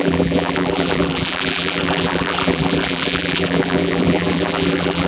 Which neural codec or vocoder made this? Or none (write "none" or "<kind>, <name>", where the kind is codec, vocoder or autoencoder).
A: vocoder, BigVGAN v2